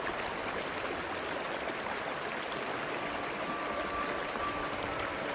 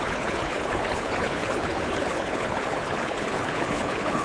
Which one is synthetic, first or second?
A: second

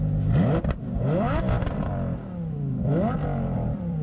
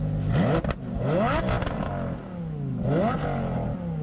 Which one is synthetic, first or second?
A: first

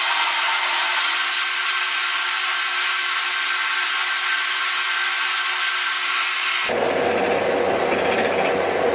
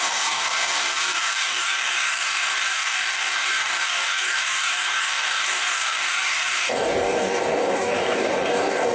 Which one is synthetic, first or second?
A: second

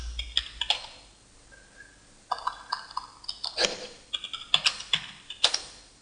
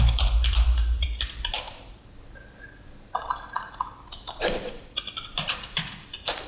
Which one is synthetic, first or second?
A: second